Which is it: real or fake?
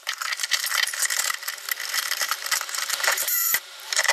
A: fake